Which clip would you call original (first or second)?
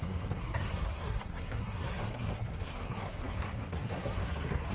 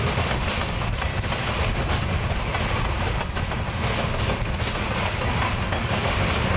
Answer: second